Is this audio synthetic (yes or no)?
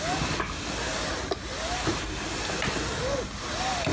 no